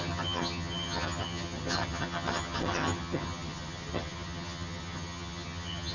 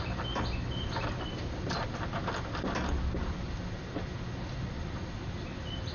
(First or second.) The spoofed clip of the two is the first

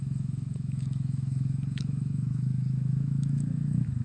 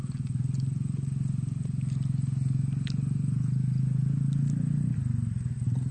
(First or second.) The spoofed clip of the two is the first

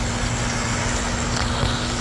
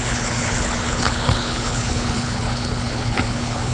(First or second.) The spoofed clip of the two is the second